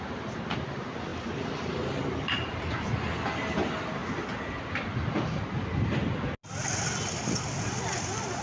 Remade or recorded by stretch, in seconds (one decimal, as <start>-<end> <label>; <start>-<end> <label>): 0.0-8.4 recorded